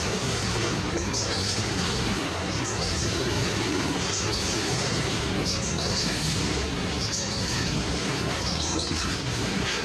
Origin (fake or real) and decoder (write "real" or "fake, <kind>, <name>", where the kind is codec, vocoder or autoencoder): fake, codec, SNAC